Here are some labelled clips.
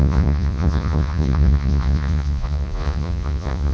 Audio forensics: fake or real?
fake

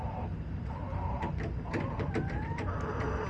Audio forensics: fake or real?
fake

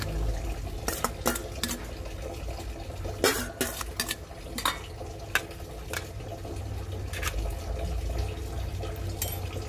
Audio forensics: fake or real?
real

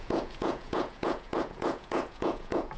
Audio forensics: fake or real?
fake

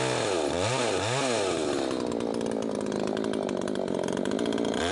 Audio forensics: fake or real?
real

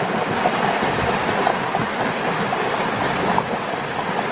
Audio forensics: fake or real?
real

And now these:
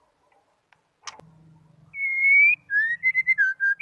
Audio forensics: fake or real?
real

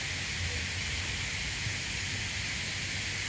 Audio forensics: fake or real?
real